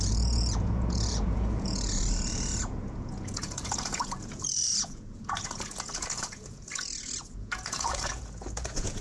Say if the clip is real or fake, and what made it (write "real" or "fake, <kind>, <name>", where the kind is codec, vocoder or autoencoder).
fake, vocoder, Vocos